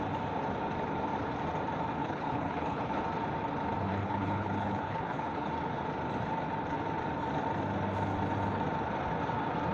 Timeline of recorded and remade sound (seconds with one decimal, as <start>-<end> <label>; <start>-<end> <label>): 0.0-2.0 recorded; 2.0-3.0 remade; 3.0-3.9 recorded; 3.9-5.5 remade; 5.5-9.7 recorded